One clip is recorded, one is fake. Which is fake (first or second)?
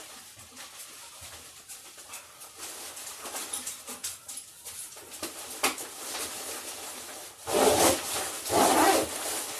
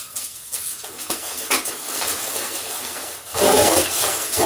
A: second